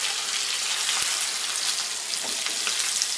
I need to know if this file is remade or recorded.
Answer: recorded